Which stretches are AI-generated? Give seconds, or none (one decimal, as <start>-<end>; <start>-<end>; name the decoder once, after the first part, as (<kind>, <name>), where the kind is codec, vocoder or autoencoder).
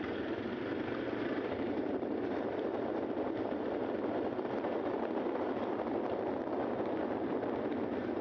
0.7-2.1 (vocoder, BigVGAN v2)